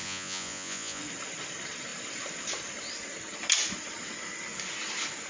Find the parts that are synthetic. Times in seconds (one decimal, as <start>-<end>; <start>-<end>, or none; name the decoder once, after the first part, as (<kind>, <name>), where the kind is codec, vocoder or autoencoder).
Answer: 0.0-1.0 (vocoder, Vocos)